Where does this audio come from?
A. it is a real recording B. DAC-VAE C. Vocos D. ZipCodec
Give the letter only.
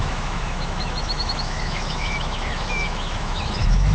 B